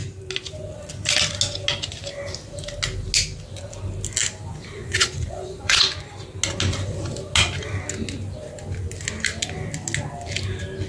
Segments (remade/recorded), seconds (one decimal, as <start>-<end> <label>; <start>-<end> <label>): 0.0-4.8 recorded; 4.8-6.1 remade; 6.1-10.9 recorded